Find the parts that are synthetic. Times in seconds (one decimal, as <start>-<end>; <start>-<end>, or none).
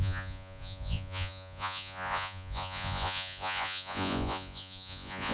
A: 0.0-5.3